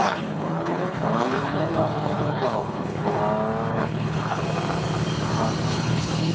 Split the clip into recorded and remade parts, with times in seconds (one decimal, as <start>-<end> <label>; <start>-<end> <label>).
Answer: 0.0-3.2 remade; 3.2-3.7 recorded; 3.7-4.4 remade; 4.4-5.7 recorded; 5.7-6.3 remade